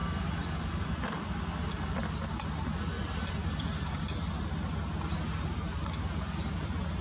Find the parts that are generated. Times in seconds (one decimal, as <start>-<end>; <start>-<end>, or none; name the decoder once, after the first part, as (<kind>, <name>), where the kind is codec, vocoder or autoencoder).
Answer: 0.0-1.2 (vocoder, BigVGAN v2); 3.4-4.0